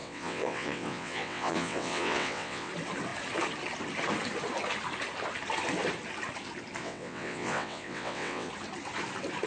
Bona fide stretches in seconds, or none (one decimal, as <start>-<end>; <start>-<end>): 2.7-6.8; 8.5-9.5